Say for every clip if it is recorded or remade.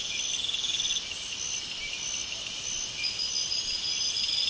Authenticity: recorded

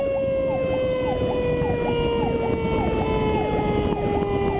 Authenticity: recorded